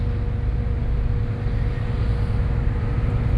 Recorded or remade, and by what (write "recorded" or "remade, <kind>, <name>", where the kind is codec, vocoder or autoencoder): recorded